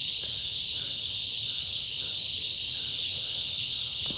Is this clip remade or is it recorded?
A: remade